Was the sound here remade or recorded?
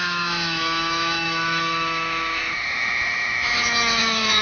remade